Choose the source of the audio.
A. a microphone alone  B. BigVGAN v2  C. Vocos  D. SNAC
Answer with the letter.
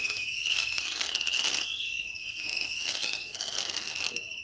D